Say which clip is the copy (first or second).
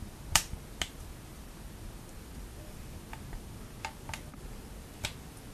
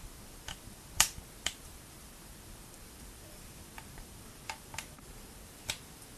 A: second